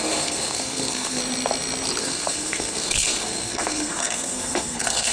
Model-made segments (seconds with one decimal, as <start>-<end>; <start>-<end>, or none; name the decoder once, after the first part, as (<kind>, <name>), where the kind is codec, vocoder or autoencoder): 0.0-1.2 (codec, SNAC); 2.0-5.1